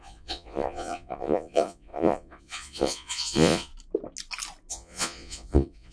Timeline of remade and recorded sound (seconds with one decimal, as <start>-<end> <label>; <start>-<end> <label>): 0.0-3.7 remade; 3.7-4.7 recorded; 4.7-5.9 remade